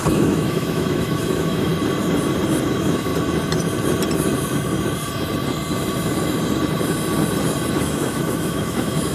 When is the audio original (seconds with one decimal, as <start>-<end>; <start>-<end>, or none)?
1.7-2.7; 3.1-7.7